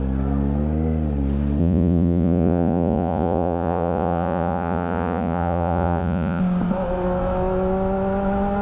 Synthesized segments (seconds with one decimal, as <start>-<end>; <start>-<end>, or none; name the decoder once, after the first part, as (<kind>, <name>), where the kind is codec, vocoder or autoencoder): 1.6-6.4 (vocoder, Vocos)